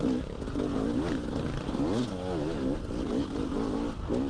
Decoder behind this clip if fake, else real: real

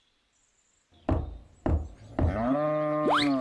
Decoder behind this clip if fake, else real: real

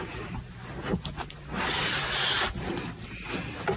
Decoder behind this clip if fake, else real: real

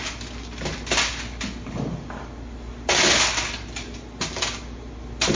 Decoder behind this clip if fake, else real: real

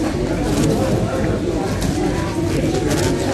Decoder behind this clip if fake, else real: real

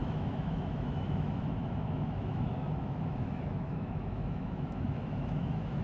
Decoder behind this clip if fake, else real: fake, autoencoder, DAC-VAE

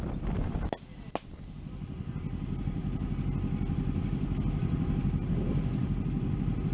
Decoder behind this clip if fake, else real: real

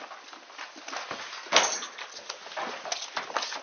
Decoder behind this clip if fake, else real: real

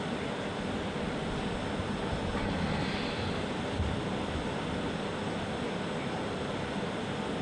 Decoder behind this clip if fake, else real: real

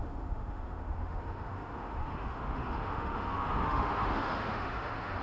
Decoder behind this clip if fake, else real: fake, autoencoder, DAC-VAE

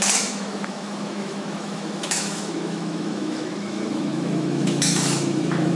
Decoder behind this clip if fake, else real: fake, autoencoder, DAC-VAE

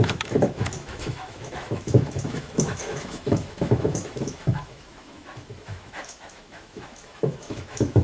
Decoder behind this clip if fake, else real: fake, autoencoder, DAC-VAE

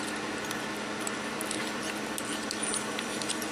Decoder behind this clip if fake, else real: real